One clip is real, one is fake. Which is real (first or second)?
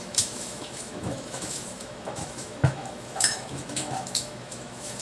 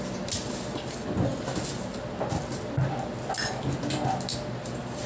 second